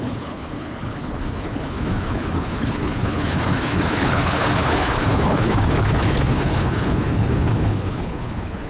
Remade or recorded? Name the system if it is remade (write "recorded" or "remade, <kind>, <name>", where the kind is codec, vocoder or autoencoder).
remade, codec, HILCodec